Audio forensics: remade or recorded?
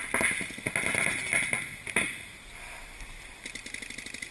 recorded